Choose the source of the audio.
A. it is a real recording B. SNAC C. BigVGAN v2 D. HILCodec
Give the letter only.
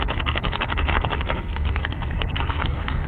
B